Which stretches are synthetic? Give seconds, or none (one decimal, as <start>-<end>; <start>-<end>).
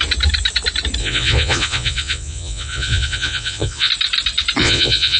1.0-3.9; 4.6-5.2